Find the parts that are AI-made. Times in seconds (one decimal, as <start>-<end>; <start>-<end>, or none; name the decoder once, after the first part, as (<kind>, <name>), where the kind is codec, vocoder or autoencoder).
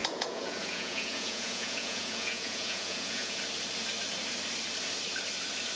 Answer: 0.0-3.4 (vocoder, Vocos)